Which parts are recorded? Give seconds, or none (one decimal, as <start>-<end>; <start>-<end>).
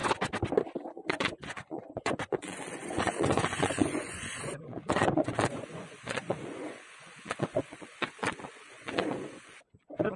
0.0-0.9